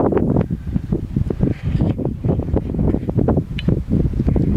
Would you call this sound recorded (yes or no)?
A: no